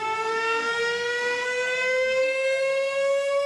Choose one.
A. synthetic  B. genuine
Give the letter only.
A